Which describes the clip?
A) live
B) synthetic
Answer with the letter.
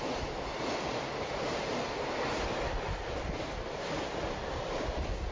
A